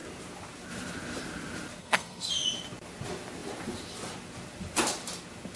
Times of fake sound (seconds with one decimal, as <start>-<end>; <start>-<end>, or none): 1.8-2.3